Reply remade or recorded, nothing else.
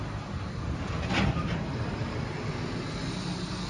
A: recorded